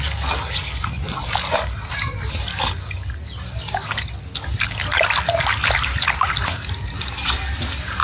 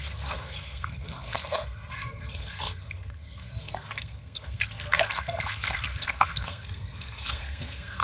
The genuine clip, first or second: first